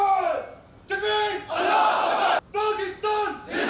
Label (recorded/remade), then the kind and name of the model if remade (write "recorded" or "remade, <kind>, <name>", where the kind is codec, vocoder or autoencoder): recorded